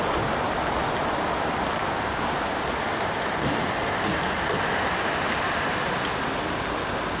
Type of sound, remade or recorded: recorded